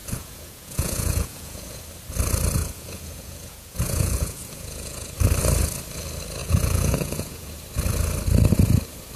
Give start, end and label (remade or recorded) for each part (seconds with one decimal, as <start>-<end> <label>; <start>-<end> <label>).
0.0-1.8 remade; 1.8-2.6 recorded; 2.6-5.1 remade; 5.1-6.4 recorded; 6.4-7.5 remade; 7.5-9.2 recorded